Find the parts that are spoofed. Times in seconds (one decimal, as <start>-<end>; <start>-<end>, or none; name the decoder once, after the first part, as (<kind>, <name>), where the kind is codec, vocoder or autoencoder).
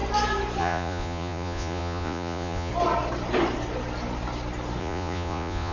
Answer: 0.6-2.7 (vocoder, Vocos); 4.8-5.7